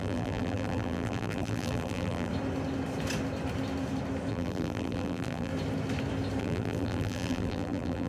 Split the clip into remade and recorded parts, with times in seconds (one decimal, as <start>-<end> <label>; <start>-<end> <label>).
0.0-2.3 remade; 2.3-4.3 recorded; 4.3-5.5 remade; 5.5-6.4 recorded; 6.4-8.1 remade